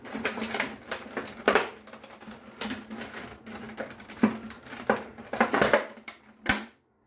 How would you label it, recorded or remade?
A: remade